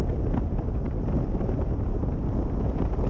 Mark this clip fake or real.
real